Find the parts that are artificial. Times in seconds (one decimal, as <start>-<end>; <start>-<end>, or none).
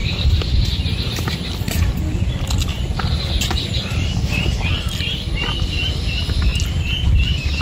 0.0-0.7